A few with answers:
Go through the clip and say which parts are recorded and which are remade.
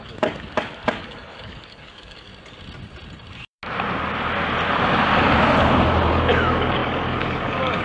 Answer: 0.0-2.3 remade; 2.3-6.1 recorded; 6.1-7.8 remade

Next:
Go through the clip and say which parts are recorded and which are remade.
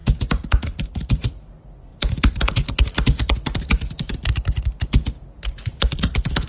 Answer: 0.0-1.5 remade; 1.5-1.9 recorded; 1.9-2.5 remade; 2.5-6.5 recorded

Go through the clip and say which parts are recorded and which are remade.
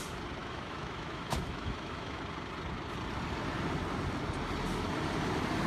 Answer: 0.0-0.4 recorded; 0.4-2.2 remade; 2.2-5.7 recorded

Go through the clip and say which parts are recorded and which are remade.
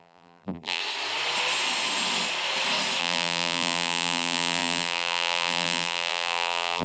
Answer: 0.0-0.8 remade; 0.8-3.0 recorded; 3.0-6.8 remade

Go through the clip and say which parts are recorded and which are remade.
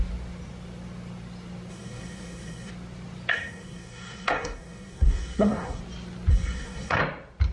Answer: 0.0-1.7 recorded; 1.7-2.7 remade; 2.7-3.3 recorded; 3.3-5.8 remade; 5.8-6.3 recorded; 6.3-7.0 remade; 7.0-7.5 recorded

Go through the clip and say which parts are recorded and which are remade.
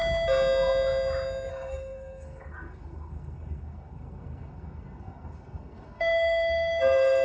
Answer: 0.0-1.5 recorded; 1.5-7.2 remade